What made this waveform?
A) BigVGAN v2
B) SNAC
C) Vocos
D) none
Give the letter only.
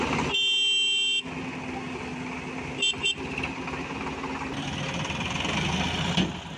D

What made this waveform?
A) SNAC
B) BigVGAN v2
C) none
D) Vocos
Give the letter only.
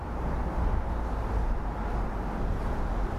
C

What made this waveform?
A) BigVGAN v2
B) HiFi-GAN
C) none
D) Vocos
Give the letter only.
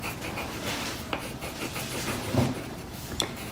A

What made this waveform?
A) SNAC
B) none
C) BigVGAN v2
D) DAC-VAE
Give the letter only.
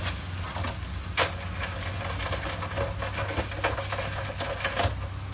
B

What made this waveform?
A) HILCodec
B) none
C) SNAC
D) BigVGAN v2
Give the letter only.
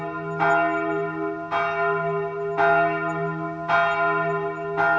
B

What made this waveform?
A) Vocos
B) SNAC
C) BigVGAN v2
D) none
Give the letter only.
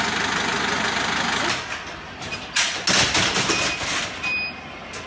D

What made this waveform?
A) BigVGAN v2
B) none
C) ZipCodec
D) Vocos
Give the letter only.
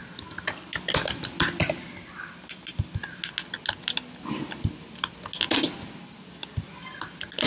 B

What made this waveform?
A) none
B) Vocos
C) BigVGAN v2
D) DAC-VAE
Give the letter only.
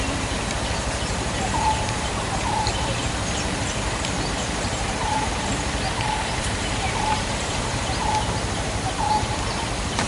C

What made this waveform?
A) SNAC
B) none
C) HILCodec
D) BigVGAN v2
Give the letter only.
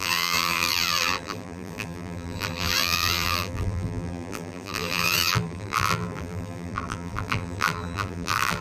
D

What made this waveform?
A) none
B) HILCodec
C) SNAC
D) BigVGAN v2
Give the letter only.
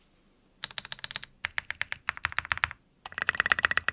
A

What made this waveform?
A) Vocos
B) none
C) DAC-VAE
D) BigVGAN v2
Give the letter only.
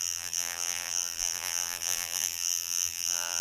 D